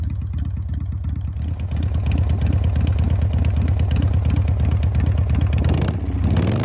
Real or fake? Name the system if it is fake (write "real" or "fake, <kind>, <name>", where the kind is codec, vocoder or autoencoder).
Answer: real